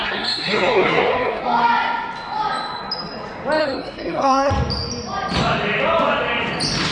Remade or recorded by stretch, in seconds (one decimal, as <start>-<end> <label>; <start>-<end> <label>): 0.0-1.4 remade; 1.4-3.6 recorded; 3.6-4.5 remade; 4.5-6.9 recorded